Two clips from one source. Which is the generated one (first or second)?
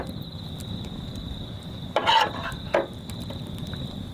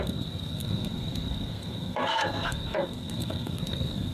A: second